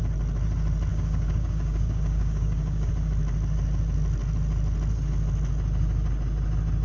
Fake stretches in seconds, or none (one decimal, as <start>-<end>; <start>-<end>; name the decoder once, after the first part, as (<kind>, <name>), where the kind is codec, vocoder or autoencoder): 0.9-2.9 (codec, DAC)